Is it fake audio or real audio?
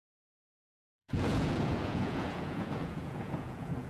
fake